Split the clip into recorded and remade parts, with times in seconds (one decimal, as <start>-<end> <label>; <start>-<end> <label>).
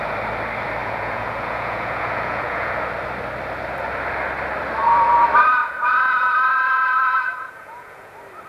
0.0-0.8 recorded; 0.8-2.9 remade; 2.9-5.6 recorded; 5.6-8.1 remade; 8.1-8.5 recorded